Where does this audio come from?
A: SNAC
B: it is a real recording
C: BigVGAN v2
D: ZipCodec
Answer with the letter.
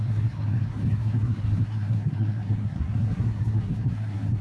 A